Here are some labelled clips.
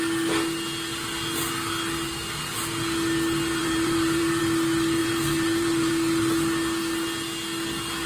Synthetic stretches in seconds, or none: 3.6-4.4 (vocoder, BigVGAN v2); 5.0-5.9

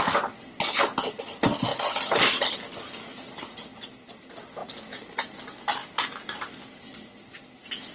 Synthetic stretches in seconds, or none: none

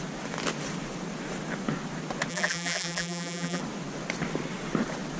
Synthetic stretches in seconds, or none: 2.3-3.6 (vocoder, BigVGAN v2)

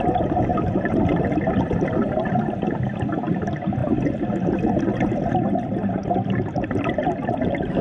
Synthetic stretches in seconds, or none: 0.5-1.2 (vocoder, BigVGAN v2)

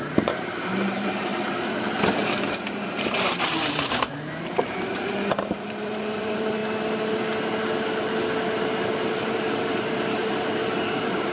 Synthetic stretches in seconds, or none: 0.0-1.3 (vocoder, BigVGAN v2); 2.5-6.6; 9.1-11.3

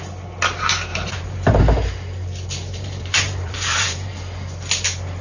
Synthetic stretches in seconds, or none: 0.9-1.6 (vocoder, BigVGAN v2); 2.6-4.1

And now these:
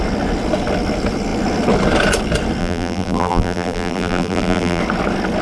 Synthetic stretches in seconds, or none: 2.6-4.8 (vocoder, BigVGAN v2)

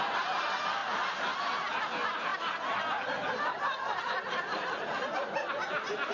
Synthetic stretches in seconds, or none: none